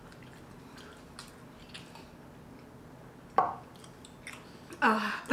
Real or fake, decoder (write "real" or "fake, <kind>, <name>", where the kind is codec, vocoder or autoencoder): real